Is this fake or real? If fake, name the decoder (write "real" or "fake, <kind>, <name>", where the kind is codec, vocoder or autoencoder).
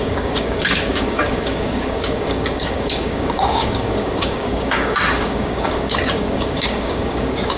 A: fake, codec, DAC